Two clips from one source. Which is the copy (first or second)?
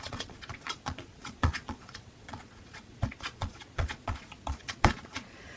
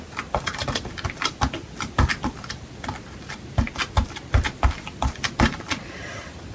first